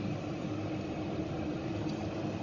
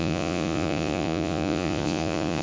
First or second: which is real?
first